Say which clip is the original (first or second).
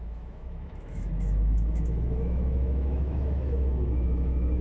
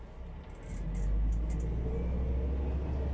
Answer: second